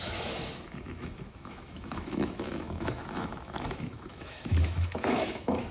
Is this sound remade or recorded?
remade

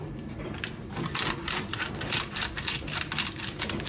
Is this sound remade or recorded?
recorded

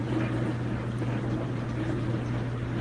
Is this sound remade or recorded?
recorded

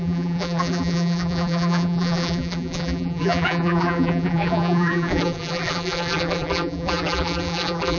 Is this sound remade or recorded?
remade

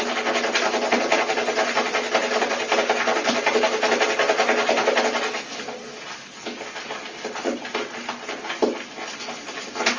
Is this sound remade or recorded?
recorded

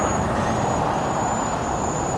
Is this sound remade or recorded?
recorded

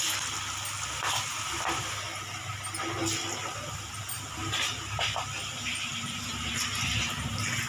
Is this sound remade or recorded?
recorded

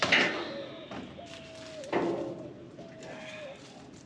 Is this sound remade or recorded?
recorded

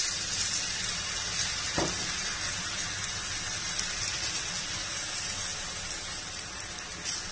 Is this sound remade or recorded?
recorded